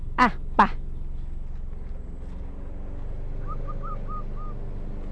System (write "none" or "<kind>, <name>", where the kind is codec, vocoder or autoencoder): none